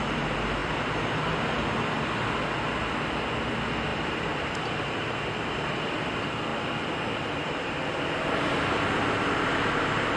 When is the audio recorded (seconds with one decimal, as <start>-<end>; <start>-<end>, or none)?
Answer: 0.0-0.6; 2.0-3.9; 4.8-6.5; 7.7-10.2